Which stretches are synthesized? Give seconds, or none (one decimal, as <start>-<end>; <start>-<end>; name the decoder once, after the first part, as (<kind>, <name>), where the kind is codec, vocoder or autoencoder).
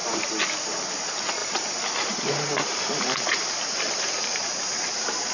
none